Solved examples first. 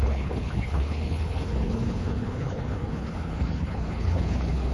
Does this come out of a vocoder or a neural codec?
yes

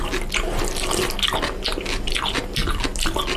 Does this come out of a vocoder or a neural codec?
no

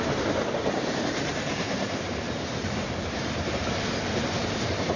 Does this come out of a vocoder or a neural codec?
yes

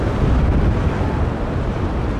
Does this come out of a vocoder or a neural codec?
no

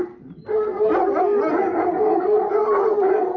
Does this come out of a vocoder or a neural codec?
no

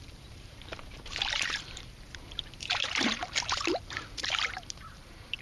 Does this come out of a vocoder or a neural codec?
yes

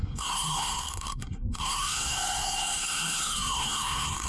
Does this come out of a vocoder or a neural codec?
yes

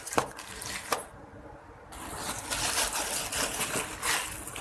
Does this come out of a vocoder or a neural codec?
no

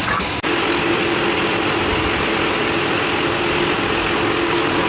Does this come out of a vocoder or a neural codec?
no